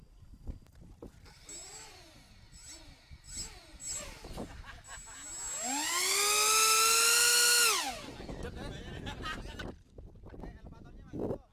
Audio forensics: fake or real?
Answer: real